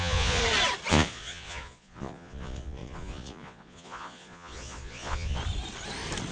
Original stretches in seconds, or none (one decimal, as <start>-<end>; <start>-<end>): 0.4-0.9; 5.4-6.3